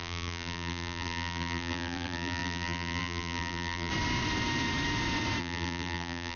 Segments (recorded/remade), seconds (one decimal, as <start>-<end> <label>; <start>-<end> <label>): 0.0-3.9 remade; 3.9-5.4 recorded; 5.4-6.4 remade